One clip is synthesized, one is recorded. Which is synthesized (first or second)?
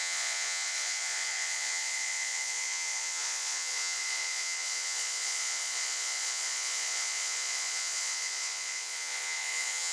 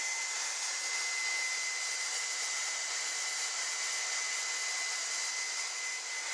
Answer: first